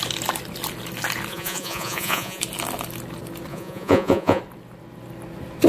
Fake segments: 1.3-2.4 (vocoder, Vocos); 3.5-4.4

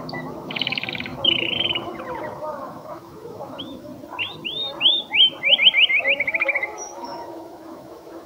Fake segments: 0.0-3.9 (autoencoder, DAC-VAE); 6.0-8.3

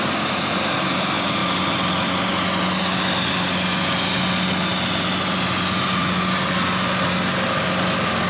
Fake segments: none

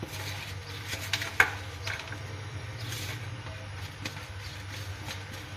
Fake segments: none